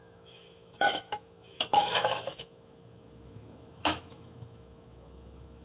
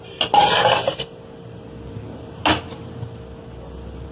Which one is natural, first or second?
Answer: second